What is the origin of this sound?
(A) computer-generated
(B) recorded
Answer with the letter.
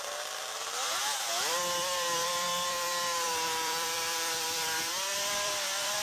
A